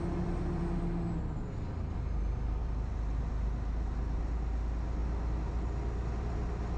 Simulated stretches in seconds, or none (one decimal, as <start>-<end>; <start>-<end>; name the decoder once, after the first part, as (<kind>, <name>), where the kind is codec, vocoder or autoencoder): 2.6-3.2 (vocoder, BigVGAN v2)